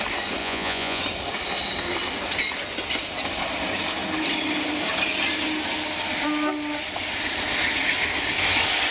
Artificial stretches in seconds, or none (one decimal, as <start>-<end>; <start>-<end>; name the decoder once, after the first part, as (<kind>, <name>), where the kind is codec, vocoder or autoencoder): 0.4-1.0 (vocoder, Vocos)